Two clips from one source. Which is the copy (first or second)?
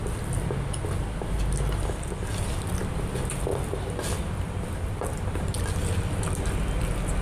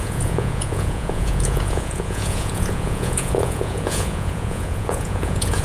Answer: second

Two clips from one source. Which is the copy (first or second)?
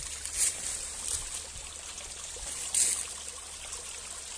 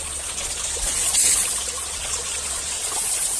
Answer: second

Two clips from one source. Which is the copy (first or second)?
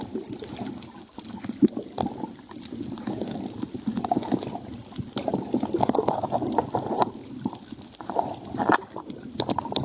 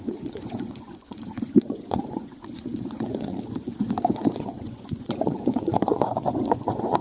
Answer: second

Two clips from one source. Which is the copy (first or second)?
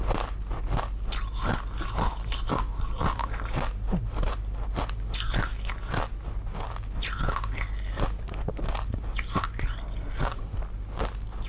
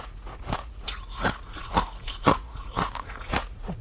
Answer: second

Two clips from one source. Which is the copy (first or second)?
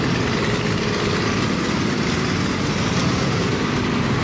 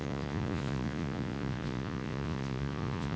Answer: second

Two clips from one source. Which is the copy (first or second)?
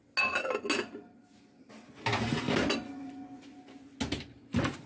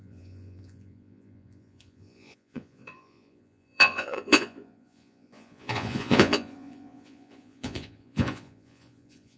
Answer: second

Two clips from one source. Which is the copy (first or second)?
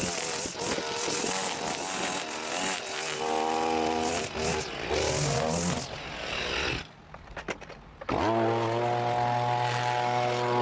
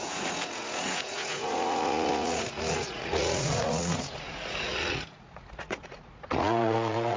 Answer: second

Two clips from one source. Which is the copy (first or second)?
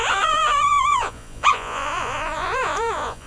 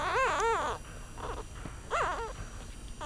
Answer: first